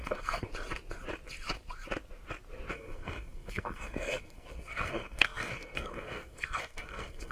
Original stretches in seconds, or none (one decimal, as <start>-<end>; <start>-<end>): 0.5-2.7